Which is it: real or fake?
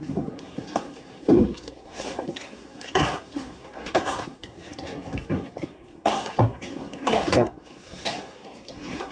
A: fake